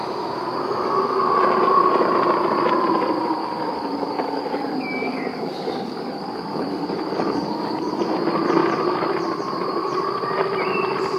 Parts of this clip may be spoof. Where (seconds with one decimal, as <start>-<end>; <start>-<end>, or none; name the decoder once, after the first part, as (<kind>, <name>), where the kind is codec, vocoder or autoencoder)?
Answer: 3.4-7.9 (codec, DAC)